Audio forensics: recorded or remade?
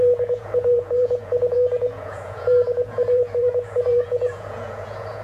remade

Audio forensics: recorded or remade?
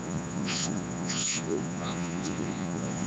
remade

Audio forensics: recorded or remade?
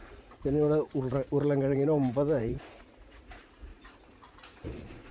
remade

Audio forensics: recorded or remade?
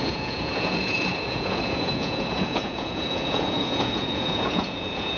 remade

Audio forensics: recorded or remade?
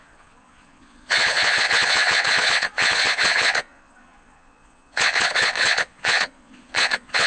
remade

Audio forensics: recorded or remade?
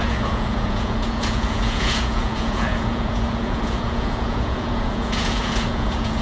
remade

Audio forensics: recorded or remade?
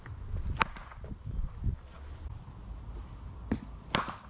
recorded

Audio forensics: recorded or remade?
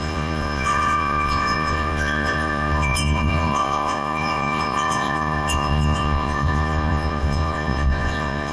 remade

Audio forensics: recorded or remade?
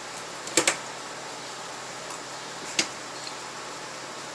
recorded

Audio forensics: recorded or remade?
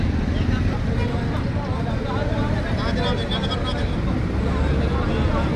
recorded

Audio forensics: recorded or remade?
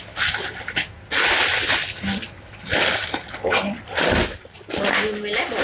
recorded